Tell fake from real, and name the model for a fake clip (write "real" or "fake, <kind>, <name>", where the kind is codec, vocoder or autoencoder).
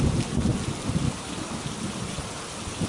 real